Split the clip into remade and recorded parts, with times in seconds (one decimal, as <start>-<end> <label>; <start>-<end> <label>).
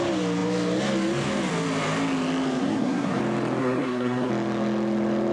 0.0-2.6 recorded; 2.6-3.2 remade; 3.2-3.6 recorded; 3.6-4.3 remade; 4.3-5.3 recorded